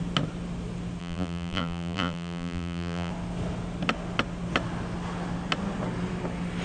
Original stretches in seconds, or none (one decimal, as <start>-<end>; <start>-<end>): 0.0-1.0; 3.1-6.6